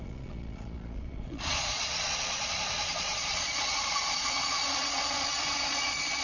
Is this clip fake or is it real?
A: fake